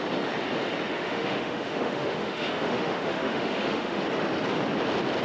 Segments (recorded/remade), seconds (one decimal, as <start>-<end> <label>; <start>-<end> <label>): 0.0-0.9 recorded; 0.9-4.0 remade; 4.0-5.2 recorded